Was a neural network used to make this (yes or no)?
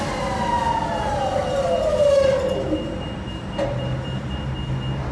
no